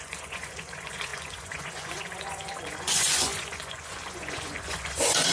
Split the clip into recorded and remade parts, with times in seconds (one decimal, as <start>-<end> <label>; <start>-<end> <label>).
0.0-5.3 remade